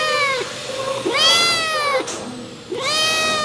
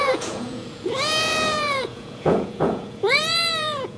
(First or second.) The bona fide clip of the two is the first